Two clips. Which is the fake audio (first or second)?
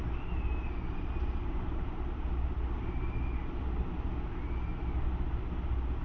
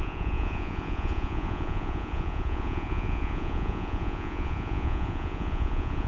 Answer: second